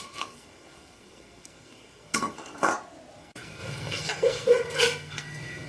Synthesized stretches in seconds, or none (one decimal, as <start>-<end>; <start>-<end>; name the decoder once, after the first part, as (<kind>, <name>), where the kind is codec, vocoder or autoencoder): 0.0-2.7 (codec, SNAC); 3.2-5.7